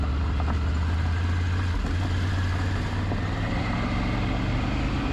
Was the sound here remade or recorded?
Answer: recorded